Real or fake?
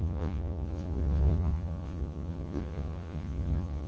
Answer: fake